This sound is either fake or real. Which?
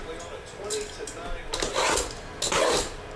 real